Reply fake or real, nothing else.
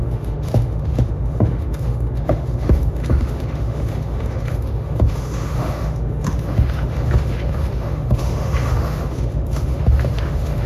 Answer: fake